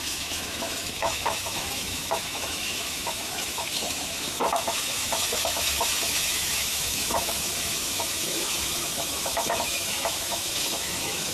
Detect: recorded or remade remade